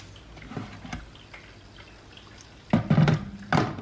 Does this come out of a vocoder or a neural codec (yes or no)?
no